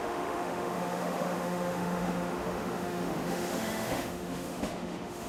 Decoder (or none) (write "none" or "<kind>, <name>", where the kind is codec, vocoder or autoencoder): autoencoder, DAC-VAE